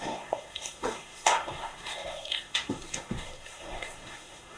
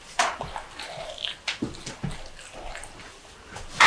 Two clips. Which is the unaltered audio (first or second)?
second